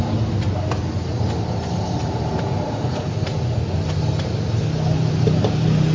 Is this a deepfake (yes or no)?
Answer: no